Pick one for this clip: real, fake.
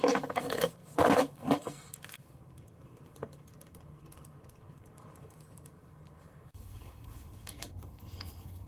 fake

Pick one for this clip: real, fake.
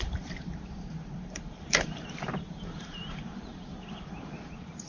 fake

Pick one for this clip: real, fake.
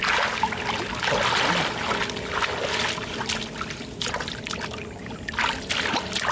real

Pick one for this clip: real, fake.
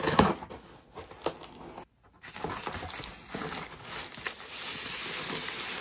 real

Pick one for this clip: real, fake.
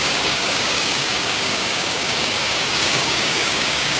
fake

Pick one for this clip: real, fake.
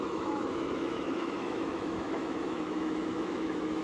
fake